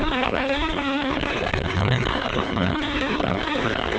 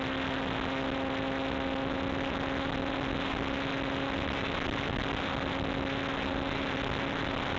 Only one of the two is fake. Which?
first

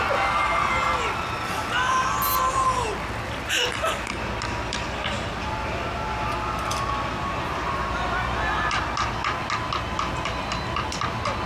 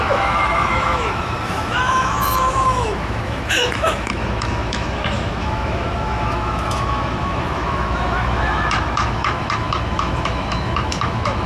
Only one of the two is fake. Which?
second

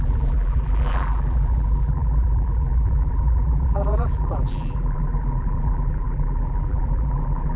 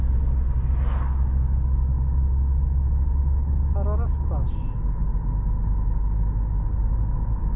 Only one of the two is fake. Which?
first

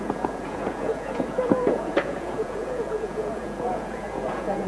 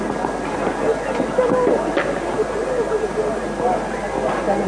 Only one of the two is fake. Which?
first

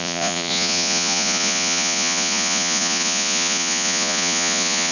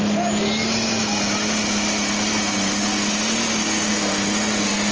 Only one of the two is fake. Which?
first